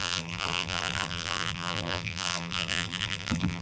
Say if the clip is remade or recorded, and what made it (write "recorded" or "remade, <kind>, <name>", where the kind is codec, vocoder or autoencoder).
remade, vocoder, BigVGAN v2